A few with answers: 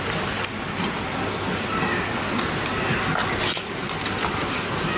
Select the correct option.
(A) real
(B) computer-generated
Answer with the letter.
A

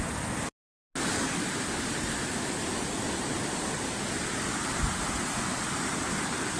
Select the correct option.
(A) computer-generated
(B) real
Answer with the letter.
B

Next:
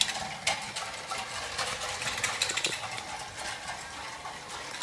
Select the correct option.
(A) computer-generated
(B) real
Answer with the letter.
B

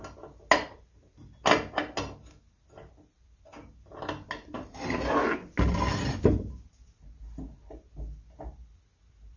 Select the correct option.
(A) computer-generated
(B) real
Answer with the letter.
B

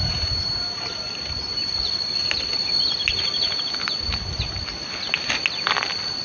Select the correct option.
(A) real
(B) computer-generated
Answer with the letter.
A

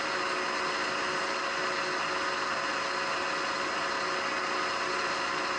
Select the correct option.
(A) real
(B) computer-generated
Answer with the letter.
A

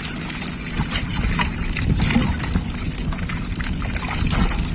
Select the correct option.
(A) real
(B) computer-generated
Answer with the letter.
A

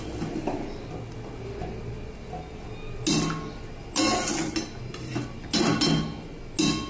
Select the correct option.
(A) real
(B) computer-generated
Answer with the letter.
A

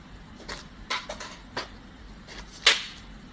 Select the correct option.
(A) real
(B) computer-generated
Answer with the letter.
A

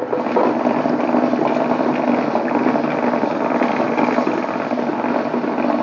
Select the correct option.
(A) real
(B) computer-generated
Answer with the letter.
A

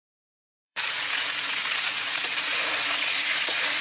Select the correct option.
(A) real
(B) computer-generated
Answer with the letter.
B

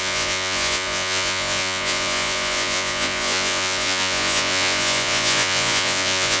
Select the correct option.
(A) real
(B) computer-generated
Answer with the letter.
B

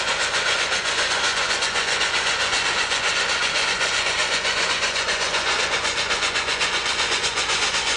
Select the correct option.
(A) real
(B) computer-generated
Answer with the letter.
B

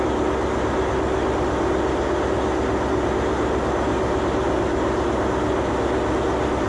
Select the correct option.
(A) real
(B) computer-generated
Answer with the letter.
A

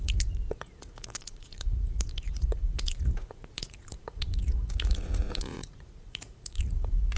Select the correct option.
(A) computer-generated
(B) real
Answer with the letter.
A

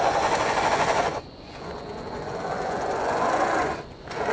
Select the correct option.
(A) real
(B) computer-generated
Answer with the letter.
B